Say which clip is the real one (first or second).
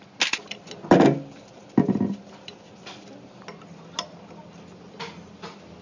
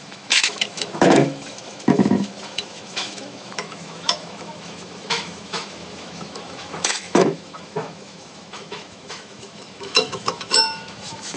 first